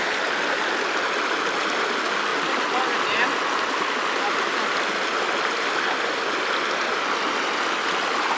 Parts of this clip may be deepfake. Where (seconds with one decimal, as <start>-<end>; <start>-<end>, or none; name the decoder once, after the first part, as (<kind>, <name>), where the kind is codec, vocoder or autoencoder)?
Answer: none